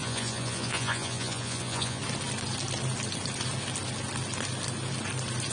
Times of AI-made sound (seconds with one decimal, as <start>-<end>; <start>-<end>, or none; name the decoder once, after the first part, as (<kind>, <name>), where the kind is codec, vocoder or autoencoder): 0.0-2.0 (vocoder, Vocos)